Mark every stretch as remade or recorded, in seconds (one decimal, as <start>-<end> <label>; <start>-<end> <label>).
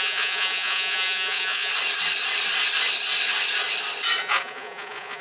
0.0-1.7 remade; 1.7-4.2 recorded; 4.2-5.2 remade